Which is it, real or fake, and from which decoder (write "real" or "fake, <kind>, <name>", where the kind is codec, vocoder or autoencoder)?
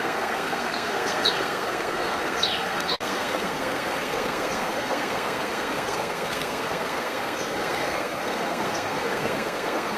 fake, codec, SNAC